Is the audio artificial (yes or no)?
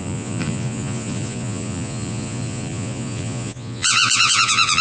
yes